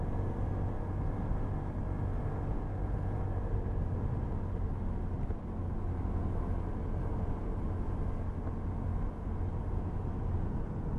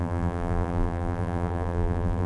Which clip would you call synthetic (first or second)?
second